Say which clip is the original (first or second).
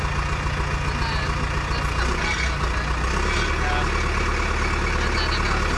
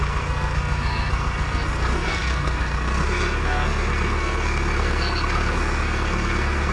first